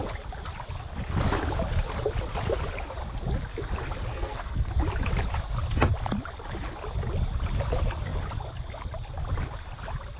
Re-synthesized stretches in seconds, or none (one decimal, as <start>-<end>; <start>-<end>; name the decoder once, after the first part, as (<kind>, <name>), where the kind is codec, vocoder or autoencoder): 4.1-4.7 (codec, SNAC)